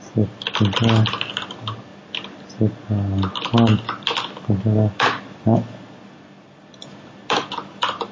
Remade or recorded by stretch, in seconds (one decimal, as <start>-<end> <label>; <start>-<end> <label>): 0.0-8.1 recorded